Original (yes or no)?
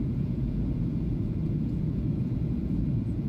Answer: no